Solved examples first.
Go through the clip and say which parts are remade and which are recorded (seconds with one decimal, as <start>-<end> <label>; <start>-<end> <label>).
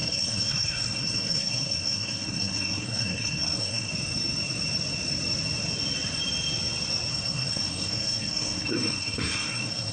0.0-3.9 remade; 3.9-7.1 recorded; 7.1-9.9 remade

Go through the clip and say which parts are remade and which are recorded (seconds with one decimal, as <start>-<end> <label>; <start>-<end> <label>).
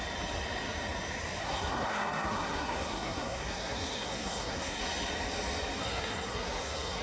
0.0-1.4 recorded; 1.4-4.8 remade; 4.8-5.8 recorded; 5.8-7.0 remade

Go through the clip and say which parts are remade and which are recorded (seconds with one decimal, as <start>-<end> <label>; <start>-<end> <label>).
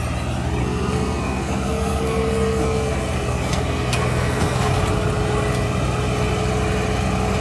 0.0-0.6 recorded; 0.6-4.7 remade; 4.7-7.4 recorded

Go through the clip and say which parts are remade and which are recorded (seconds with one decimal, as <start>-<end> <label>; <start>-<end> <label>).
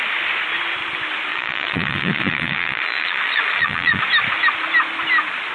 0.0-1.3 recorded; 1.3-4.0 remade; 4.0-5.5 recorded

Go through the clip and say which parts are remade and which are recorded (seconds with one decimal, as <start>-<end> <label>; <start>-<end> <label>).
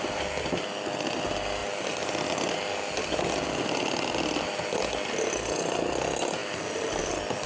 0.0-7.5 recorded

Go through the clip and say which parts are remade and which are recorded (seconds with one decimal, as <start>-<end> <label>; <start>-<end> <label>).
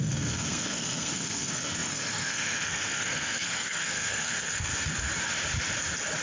0.0-4.7 remade; 4.7-6.2 recorded